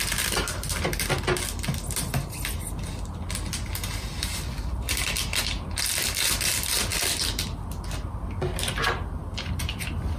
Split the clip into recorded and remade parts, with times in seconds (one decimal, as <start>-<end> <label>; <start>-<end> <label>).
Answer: 0.0-10.2 recorded